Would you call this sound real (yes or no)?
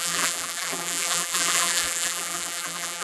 no